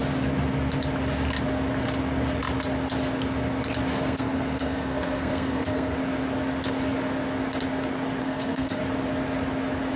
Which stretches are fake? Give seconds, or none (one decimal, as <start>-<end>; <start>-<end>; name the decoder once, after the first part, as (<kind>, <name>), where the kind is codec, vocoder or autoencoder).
3.9-6.0 (codec, SNAC); 8.2-8.8